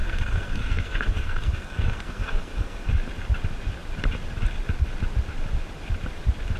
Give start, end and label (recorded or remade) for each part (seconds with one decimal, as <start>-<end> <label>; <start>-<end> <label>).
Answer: 0.0-2.9 remade; 2.9-6.6 recorded